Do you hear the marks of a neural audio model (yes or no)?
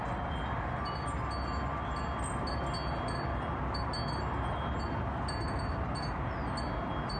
no